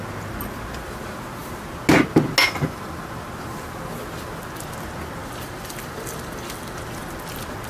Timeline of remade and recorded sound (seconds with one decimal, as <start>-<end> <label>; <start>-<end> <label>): 0.0-5.2 recorded; 5.2-6.8 remade; 6.8-7.7 recorded